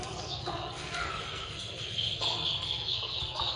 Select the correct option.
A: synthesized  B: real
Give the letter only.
A